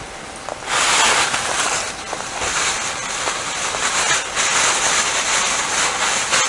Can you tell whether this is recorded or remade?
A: recorded